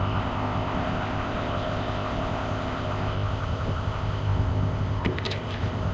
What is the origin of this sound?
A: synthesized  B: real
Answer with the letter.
A